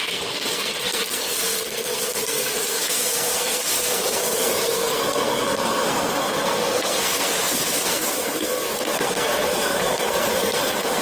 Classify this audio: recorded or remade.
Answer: remade